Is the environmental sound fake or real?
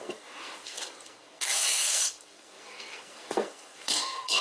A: fake